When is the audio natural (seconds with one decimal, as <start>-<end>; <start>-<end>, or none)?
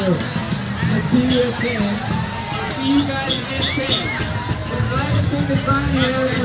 0.0-6.4